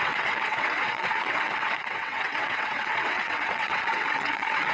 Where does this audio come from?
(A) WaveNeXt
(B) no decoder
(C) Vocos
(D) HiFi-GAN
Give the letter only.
A